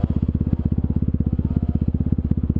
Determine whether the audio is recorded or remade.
recorded